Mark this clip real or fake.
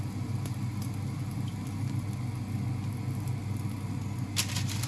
real